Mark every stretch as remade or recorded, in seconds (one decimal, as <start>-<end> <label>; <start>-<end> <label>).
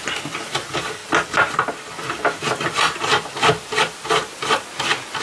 0.0-5.2 recorded